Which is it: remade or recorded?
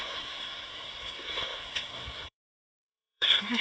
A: remade